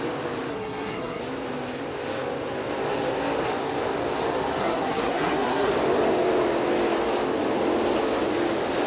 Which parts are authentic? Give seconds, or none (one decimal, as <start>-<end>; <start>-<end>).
0.0-0.5; 1.2-4.6; 5.7-8.9